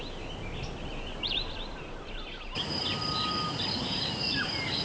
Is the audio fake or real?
real